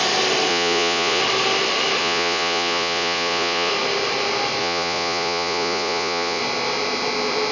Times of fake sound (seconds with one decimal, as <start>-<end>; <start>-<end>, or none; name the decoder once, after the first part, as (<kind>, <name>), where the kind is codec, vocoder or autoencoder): 0.5-1.2 (vocoder, Vocos); 2.0-3.7; 4.6-6.4